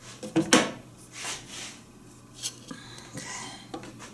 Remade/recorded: recorded